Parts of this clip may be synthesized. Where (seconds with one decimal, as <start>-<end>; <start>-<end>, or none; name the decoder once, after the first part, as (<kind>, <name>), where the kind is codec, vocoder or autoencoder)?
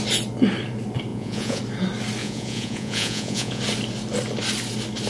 1.1-1.6 (vocoder, Vocos); 2.2-3.6